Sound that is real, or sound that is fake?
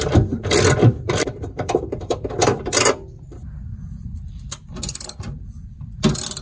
fake